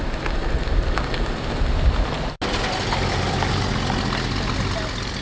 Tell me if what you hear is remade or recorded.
recorded